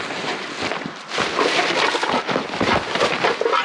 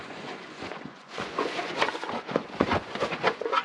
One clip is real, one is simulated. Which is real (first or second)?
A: first